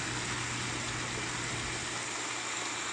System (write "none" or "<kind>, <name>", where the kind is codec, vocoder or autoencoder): none